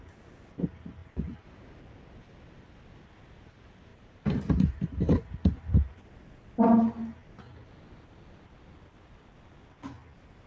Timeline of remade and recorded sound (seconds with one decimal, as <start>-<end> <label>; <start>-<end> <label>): 0.0-1.0 recorded; 1.0-1.8 remade; 1.8-3.9 recorded; 3.9-5.3 remade; 5.3-10.5 recorded